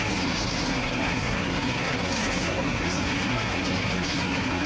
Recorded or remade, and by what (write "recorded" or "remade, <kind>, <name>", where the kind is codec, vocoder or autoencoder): remade, codec, SNAC